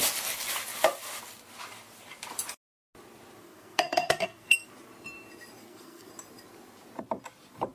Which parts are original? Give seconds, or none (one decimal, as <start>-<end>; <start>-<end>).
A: 0.0-3.4; 4.7-5.6; 6.1-7.7

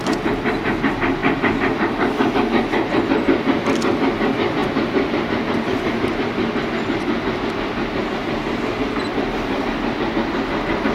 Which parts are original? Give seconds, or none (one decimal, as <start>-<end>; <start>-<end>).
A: 0.0-1.2; 2.3-9.1; 9.7-10.9

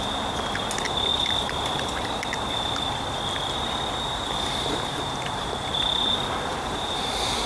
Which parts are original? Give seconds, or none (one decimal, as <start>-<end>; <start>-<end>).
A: 0.0-1.1; 2.8-4.9; 5.5-6.5; 7.1-7.5